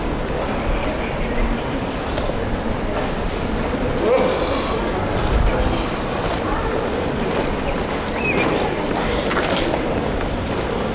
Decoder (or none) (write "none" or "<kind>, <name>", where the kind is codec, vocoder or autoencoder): none